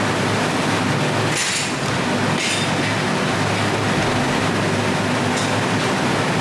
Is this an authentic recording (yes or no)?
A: yes